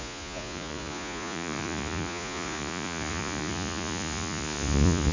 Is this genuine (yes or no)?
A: no